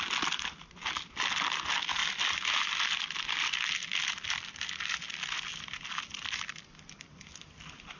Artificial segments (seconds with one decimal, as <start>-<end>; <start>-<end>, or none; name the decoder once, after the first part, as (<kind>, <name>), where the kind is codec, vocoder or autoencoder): none